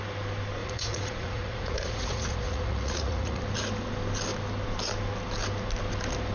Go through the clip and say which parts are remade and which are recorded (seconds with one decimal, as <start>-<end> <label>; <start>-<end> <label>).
0.0-0.6 recorded; 0.6-3.4 remade; 3.4-6.3 recorded